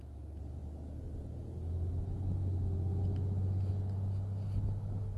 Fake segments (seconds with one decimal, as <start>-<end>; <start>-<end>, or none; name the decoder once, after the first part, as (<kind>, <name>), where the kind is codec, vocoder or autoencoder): none